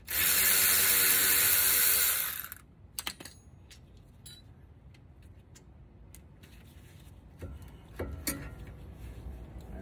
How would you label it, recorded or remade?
recorded